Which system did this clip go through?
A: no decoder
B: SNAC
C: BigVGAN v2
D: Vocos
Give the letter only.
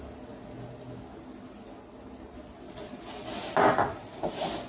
A